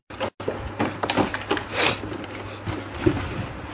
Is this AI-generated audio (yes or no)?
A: no